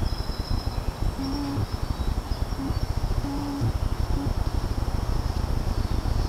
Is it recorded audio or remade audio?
recorded